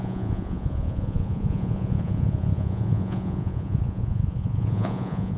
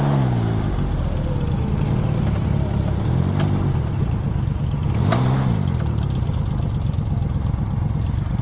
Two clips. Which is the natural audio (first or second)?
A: second